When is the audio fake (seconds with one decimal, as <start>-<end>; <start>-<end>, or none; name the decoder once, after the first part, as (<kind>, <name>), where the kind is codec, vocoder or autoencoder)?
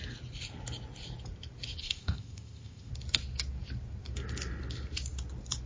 1.8-2.9 (codec, ZipCodec)